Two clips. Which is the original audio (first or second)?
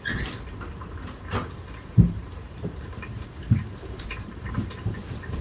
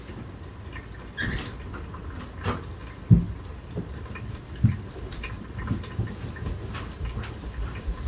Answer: second